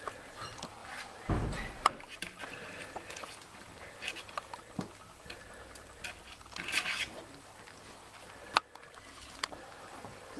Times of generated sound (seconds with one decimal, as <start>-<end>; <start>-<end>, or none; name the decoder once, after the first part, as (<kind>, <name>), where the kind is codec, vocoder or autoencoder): 0.0-0.8 (vocoder, BigVGAN v2); 2.8-10.4